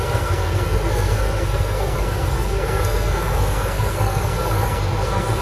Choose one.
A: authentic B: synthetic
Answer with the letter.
B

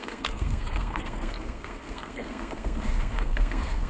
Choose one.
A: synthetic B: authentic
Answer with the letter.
A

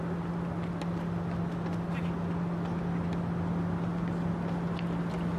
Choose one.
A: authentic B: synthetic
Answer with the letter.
A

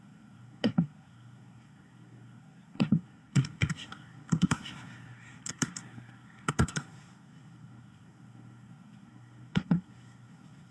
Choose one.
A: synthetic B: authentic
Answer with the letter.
A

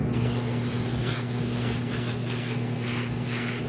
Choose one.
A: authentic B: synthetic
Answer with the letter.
B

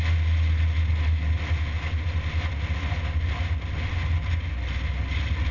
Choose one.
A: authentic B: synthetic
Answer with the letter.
A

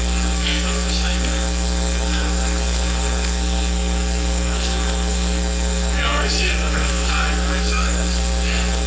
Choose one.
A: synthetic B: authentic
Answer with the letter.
A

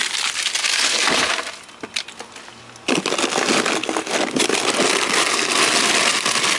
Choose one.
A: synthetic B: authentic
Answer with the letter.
B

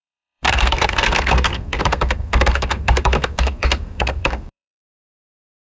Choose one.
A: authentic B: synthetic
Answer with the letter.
B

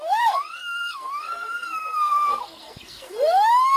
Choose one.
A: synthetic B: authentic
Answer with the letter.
A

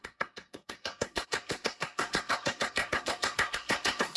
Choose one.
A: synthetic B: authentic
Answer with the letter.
A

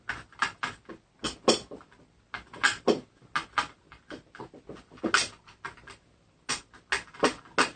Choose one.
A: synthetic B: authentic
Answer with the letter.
B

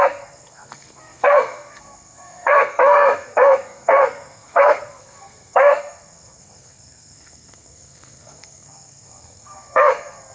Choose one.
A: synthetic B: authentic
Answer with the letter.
A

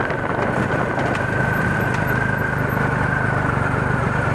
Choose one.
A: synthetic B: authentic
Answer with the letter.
B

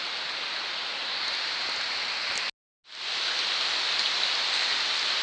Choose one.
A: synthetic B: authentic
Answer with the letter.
B